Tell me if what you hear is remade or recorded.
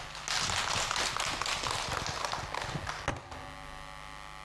recorded